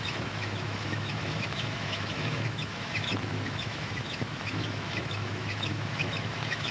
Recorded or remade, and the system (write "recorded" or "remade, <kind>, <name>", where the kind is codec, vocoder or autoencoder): remade, autoencoder, DAC-VAE